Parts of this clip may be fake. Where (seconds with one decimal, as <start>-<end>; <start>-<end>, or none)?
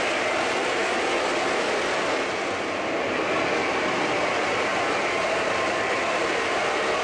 none